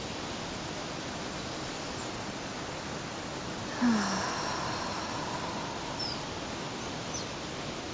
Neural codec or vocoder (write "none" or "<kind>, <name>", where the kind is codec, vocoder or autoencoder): none